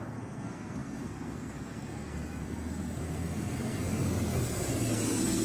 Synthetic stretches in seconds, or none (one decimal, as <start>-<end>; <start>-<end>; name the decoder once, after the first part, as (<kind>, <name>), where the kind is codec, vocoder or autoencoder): 0.0-5.4 (codec, SNAC)